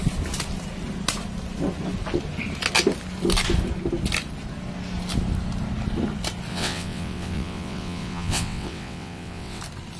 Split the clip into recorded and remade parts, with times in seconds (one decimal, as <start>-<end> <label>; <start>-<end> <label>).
0.0-6.5 recorded; 6.5-9.6 remade; 9.6-10.0 recorded